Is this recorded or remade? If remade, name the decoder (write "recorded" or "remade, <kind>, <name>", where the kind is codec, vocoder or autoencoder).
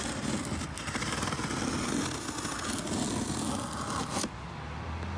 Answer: recorded